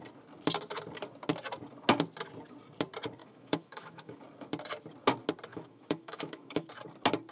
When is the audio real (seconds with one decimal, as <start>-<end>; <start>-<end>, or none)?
0.0-3.2; 4.2-5.5; 6.7-7.3

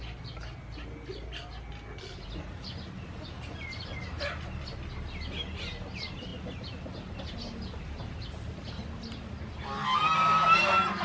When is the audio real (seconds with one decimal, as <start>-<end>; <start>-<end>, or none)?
0.0-11.0

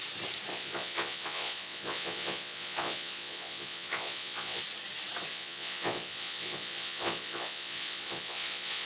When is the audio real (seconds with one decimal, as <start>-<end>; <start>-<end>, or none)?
0.0-0.5; 4.6-5.3

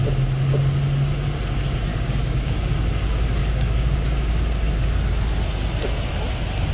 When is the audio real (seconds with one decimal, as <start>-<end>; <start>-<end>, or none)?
0.0-1.9; 2.7-3.4; 4.4-6.7

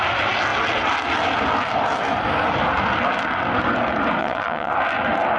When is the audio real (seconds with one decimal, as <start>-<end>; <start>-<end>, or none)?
0.0-4.2; 4.7-5.4

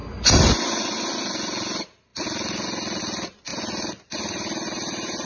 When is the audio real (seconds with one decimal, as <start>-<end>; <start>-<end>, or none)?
0.0-5.3